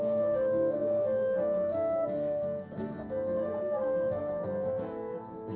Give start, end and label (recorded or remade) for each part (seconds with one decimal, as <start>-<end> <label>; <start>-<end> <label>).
0.0-5.6 remade